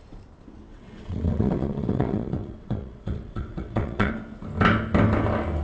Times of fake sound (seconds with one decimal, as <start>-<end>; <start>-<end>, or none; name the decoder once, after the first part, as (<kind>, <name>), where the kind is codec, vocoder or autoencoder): 0.7-4.1 (vocoder, WaveNeXt)